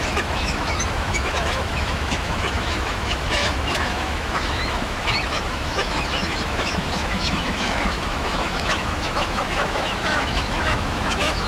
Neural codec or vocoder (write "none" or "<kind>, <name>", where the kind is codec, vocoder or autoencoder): autoencoder, DAC-VAE